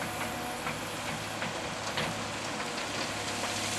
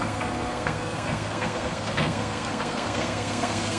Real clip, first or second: first